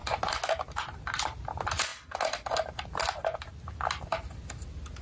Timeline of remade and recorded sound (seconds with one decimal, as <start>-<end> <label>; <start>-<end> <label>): 0.0-5.0 recorded